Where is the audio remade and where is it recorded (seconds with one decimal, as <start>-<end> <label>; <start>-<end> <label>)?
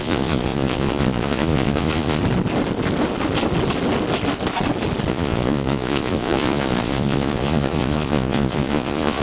0.0-2.2 remade; 2.2-5.1 recorded; 5.1-9.2 remade